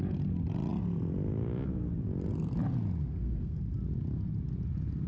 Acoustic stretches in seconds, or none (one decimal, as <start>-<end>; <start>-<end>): 0.0-3.0; 3.6-5.1